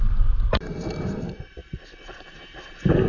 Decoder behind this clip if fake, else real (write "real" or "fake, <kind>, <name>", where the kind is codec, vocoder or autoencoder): real